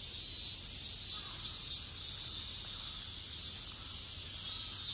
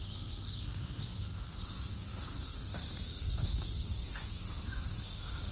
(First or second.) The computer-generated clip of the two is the second